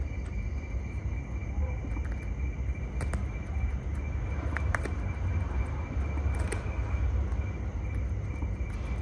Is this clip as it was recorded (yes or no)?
yes